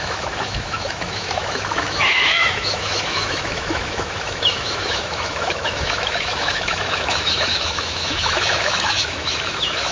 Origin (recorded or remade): remade